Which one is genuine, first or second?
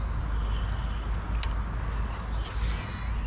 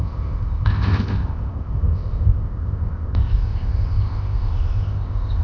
first